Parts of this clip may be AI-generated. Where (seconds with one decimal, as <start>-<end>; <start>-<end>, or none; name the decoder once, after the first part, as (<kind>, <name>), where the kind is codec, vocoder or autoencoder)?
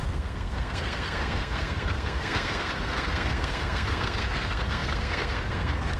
0.0-6.0 (codec, SNAC)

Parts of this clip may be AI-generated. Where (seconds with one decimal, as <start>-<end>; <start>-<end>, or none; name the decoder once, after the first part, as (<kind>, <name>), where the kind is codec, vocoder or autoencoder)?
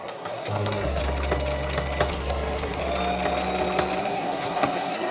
0.0-1.0 (codec, SNAC); 2.1-2.8; 4.0-5.1